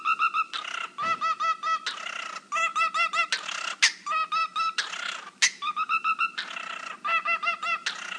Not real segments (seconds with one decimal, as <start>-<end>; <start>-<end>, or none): none